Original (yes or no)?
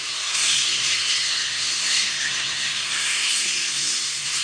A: no